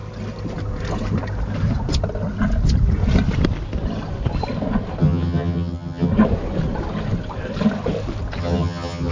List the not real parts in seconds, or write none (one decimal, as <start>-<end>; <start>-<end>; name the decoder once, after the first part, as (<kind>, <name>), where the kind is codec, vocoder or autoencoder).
5.0-6.1 (vocoder, HiFi-GAN); 8.4-9.1